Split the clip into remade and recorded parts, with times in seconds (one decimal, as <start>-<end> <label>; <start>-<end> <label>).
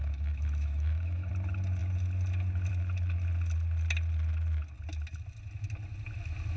0.0-1.3 remade; 1.3-6.6 recorded